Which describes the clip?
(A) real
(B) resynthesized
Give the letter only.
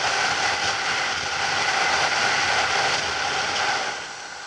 A